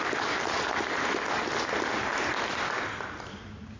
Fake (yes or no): no